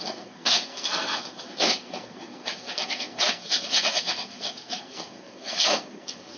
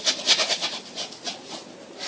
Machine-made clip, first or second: first